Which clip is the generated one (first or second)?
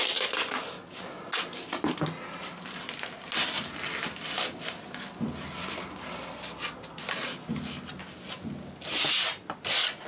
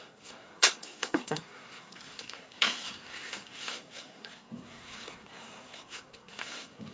second